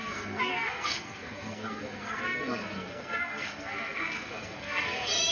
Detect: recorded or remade remade